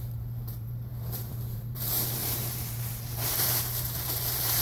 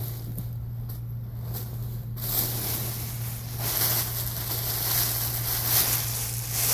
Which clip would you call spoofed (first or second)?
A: first